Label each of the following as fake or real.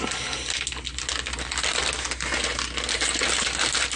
real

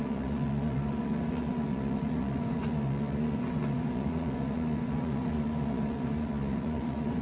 fake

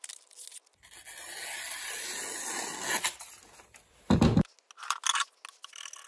real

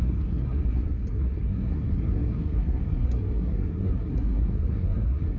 fake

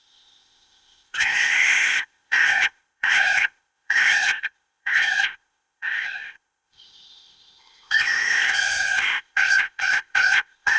fake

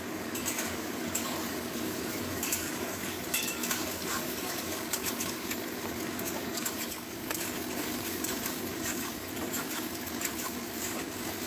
fake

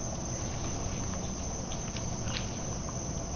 real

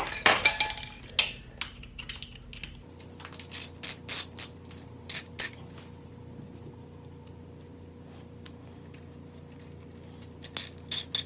real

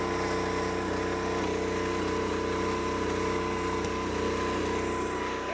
real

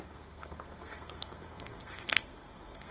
fake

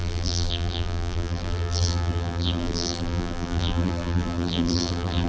fake